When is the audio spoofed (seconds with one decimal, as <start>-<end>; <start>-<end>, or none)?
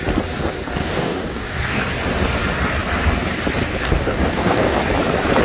0.8-1.8; 3.8-4.8